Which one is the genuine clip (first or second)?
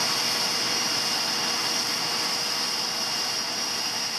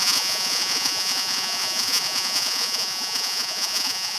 first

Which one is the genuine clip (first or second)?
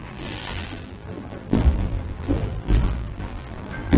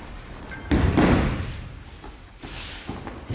second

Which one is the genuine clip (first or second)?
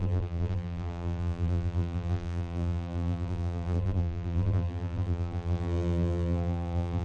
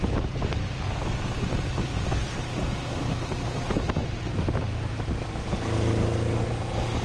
second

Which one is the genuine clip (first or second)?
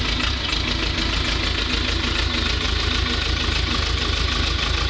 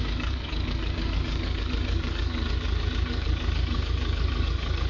first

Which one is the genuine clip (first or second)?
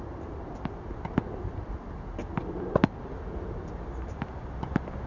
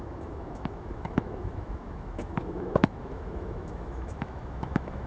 first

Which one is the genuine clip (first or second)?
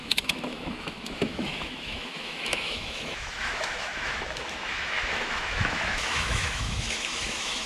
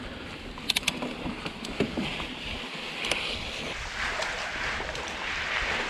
second